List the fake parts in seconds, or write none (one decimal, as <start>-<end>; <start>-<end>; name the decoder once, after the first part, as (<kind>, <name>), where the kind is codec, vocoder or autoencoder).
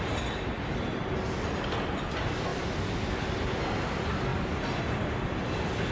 none